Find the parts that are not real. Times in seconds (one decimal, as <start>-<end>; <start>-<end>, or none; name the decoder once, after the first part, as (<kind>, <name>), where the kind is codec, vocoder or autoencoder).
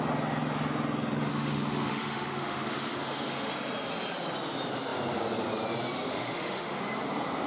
1.3-3.5 (autoencoder, DAC-VAE); 6.1-6.8